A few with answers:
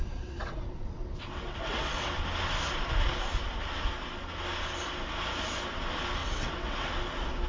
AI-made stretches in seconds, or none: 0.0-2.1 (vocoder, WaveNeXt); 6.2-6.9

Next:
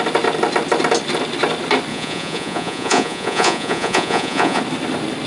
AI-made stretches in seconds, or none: 1.9-4.6 (vocoder, Vocos)